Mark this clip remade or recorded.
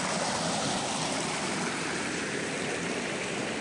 recorded